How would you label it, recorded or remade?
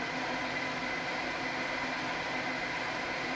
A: recorded